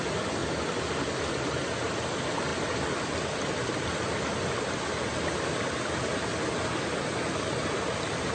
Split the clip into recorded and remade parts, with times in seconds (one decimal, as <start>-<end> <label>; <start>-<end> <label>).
0.0-8.3 recorded